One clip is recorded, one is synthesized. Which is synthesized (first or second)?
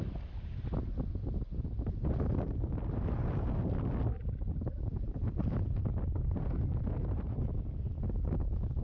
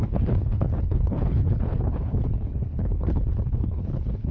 second